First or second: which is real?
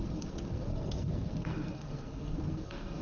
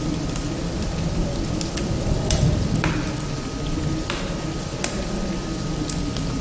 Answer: second